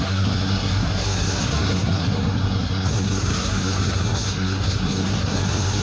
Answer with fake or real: fake